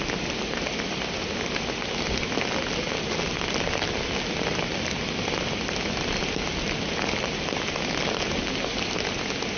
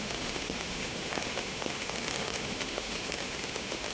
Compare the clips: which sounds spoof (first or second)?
second